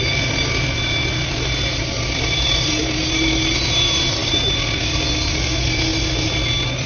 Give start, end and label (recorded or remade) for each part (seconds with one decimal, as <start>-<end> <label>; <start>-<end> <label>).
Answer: 0.0-6.9 recorded